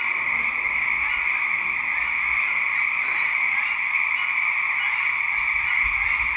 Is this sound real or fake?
real